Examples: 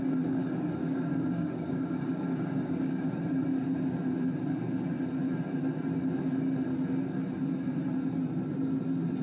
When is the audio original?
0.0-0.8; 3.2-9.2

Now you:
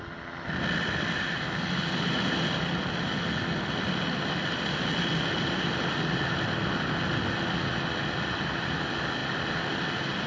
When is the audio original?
0.0-10.3

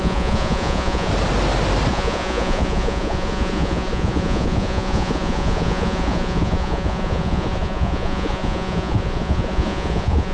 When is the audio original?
1.1-1.9